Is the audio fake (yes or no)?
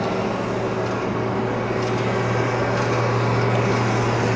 no